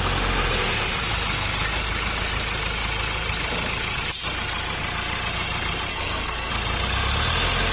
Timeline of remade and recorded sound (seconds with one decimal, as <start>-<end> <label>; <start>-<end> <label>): 0.0-5.9 recorded; 5.9-6.5 remade; 6.5-7.7 recorded